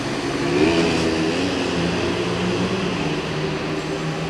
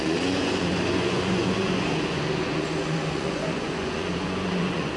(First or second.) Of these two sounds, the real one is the first